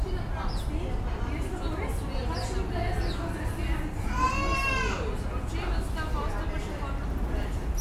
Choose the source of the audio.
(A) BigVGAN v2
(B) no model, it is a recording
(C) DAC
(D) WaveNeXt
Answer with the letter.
B